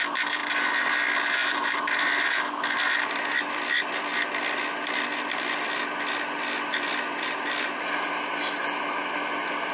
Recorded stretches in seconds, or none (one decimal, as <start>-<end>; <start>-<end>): 0.0-9.7